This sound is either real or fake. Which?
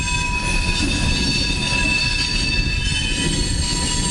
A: real